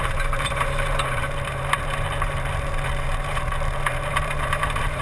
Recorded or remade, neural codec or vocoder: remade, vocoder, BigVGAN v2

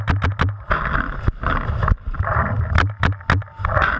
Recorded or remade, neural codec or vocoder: recorded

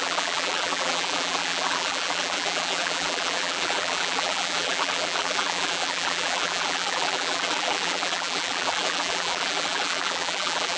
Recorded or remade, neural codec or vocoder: remade, vocoder, BigVGAN v2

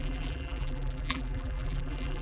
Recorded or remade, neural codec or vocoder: remade, vocoder, BigVGAN v2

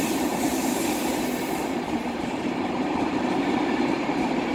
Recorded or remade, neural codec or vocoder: remade, vocoder, BigVGAN v2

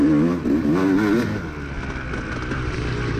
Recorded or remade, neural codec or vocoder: recorded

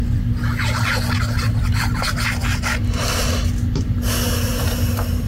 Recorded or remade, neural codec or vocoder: recorded